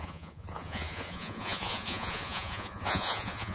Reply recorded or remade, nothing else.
remade